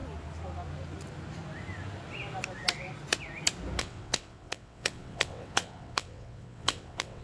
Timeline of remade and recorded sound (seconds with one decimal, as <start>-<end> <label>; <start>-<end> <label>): 0.0-3.8 recorded; 3.8-7.2 remade